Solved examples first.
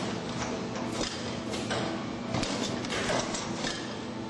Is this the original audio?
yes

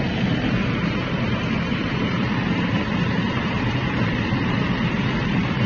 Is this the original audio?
no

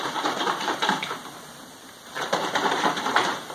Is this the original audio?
no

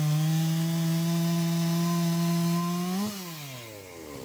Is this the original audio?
yes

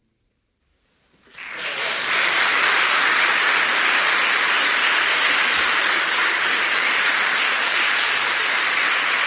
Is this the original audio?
no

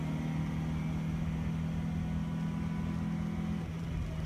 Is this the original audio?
yes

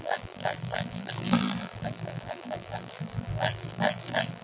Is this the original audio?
no